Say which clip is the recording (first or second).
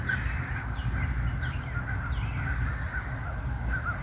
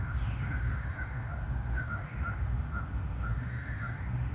first